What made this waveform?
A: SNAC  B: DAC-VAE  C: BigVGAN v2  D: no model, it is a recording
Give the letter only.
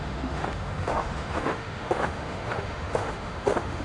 B